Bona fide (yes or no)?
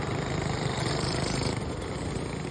yes